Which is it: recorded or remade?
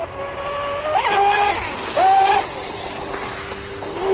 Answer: recorded